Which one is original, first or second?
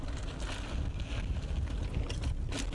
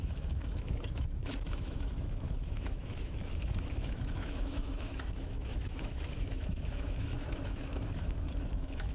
first